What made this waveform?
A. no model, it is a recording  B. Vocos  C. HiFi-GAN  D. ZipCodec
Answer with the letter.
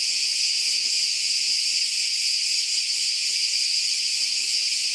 B